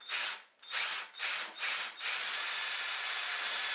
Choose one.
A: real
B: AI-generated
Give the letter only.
A